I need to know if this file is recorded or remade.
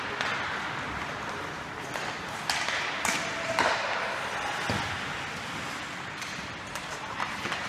recorded